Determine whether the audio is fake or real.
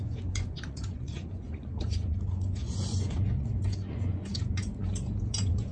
fake